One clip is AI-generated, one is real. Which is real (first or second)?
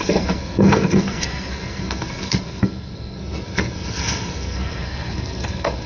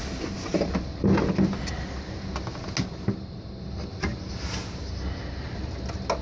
second